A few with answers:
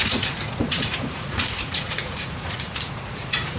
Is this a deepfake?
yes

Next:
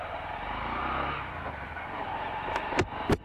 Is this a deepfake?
no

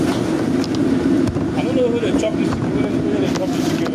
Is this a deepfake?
no